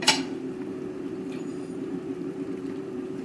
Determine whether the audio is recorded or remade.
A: remade